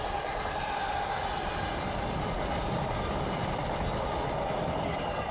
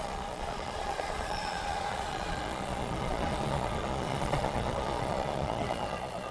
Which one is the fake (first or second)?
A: second